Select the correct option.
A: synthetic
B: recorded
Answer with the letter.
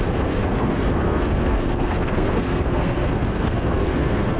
A